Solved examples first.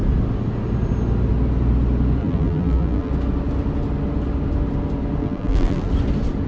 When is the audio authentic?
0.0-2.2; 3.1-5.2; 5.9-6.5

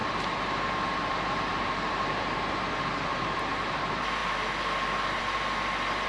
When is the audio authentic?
2.5-3.1; 3.8-6.1

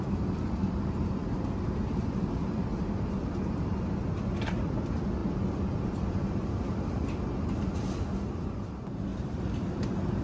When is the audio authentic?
0.0-0.6; 1.4-2.7; 3.8-9.1

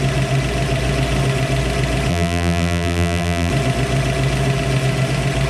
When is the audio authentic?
0.0-2.1; 3.5-5.5

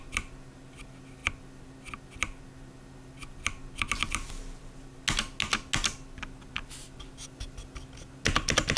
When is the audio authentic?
0.0-8.8

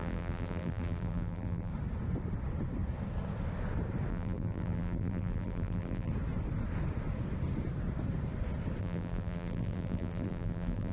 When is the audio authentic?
1.7-4.1; 6.1-8.8

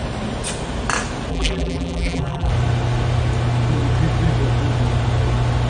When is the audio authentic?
0.0-1.3; 2.5-5.7